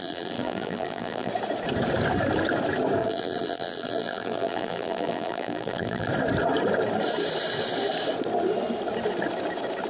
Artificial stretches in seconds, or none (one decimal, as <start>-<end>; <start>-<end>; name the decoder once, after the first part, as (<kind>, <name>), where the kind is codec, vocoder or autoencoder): 0.0-1.3 (vocoder, BigVGAN v2); 3.0-6.1